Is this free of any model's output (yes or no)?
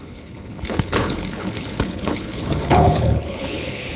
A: no